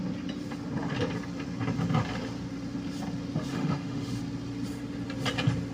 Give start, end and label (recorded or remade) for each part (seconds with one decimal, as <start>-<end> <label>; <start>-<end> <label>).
0.0-3.5 recorded; 3.5-4.2 remade; 4.2-5.7 recorded